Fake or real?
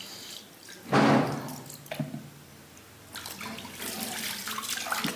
real